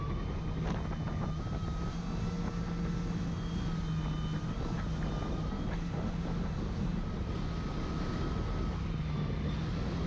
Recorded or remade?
recorded